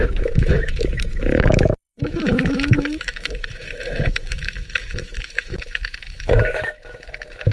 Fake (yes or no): yes